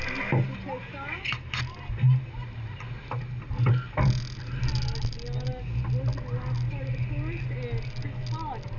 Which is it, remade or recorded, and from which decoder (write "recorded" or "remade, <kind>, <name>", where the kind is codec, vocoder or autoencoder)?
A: recorded